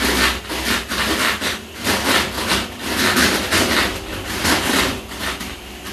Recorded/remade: recorded